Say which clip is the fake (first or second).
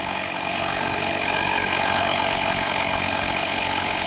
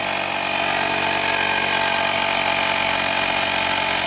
first